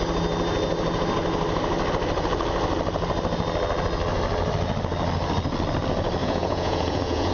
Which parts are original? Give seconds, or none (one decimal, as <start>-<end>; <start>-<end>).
0.0-6.2